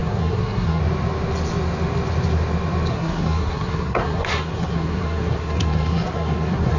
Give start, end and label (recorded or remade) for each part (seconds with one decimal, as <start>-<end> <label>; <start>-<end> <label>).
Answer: 0.0-0.8 remade; 0.8-2.9 recorded; 2.9-6.8 remade